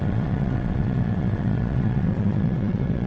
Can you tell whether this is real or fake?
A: fake